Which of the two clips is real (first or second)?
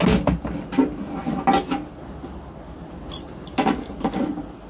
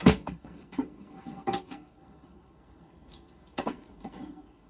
first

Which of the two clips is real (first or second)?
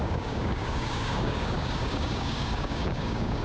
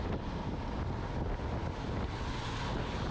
second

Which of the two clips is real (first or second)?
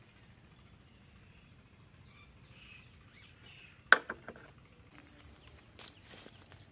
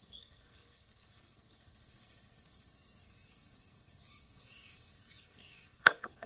first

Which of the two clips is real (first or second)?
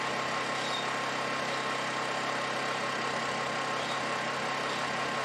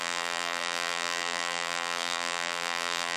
first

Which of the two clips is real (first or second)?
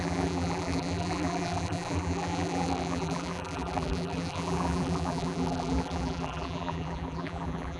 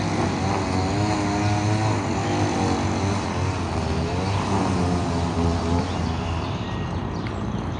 second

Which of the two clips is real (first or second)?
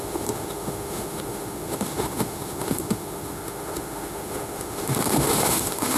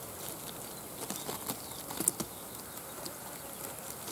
second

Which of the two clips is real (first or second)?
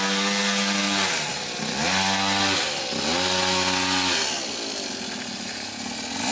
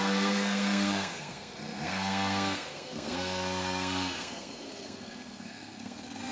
first